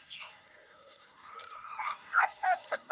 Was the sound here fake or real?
fake